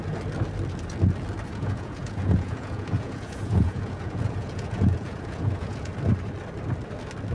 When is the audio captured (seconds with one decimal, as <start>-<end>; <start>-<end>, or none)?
0.0-1.5; 5.9-7.3